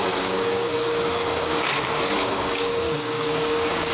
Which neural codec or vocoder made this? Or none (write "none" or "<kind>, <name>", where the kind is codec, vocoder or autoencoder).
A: codec, DAC